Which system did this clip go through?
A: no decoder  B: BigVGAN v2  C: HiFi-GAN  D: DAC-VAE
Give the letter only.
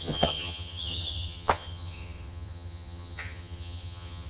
C